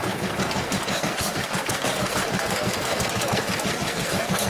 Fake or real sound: fake